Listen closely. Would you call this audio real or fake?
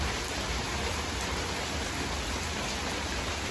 real